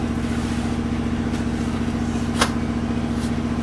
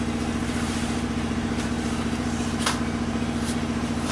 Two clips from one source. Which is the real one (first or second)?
first